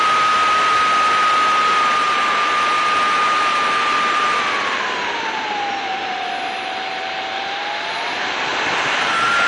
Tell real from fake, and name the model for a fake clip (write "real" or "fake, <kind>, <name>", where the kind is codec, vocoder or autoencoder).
real